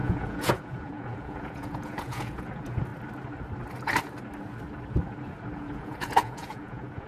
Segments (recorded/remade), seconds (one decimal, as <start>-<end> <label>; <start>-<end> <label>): 0.0-2.9 remade; 2.9-5.6 recorded; 5.6-7.1 remade